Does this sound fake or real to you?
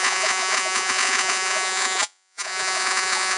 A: fake